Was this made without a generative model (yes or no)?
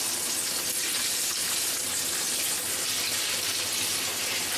yes